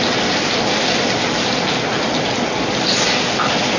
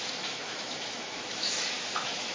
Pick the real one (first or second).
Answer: first